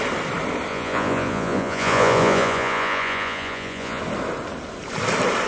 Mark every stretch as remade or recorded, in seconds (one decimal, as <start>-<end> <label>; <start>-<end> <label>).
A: 0.0-0.7 recorded; 0.7-4.0 remade; 4.0-5.5 recorded